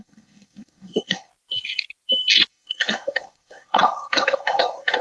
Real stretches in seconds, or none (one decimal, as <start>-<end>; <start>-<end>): 1.3-2.5